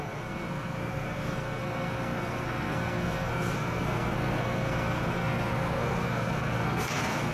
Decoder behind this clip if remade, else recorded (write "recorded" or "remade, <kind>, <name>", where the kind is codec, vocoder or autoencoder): remade, codec, SNAC